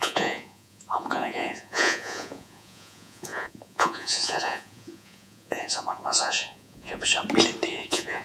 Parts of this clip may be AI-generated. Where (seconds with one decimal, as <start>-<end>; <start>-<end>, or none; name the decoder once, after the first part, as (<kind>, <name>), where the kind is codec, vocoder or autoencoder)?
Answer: 0.0-7.1 (vocoder, Vocos); 7.7-8.2